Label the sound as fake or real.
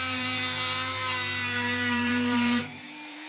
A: fake